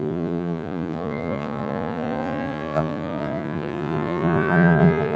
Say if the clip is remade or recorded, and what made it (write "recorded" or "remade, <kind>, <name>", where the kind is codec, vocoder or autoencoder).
remade, vocoder, Vocos